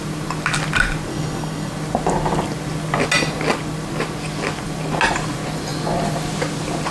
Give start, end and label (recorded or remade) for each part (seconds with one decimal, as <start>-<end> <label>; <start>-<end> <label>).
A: 0.0-1.1 recorded; 1.1-1.7 remade; 1.7-6.9 recorded

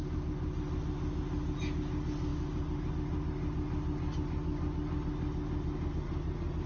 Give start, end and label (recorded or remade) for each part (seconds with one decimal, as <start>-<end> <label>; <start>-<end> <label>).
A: 0.0-6.7 recorded

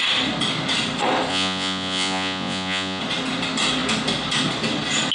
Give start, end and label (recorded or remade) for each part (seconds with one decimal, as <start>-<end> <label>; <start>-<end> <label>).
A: 0.0-1.3 recorded; 1.3-3.0 remade; 3.0-5.1 recorded

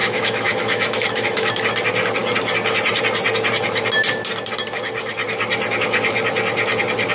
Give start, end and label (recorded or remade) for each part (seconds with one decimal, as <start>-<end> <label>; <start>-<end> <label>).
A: 0.0-1.5 remade; 1.5-7.1 recorded

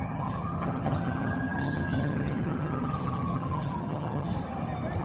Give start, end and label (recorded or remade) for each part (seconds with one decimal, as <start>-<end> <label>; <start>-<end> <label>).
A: 0.0-4.3 remade; 4.3-5.0 recorded

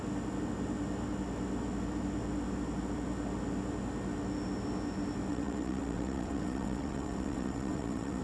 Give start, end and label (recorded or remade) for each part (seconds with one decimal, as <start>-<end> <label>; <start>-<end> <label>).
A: 0.0-5.3 recorded; 5.3-8.2 remade

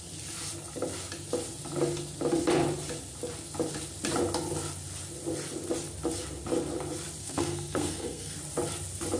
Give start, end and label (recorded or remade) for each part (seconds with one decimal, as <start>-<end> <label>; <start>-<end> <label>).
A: 0.0-7.2 recorded; 7.2-8.4 remade; 8.4-9.2 recorded

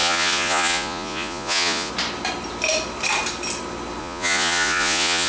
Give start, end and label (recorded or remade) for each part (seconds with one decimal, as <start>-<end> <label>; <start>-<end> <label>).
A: 0.0-1.9 remade; 1.9-4.0 recorded; 4.0-5.3 remade